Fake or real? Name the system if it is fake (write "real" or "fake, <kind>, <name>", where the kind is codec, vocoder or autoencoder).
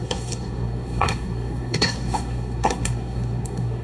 fake, codec, SNAC